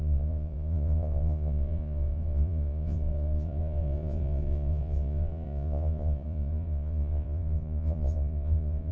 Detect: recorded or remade remade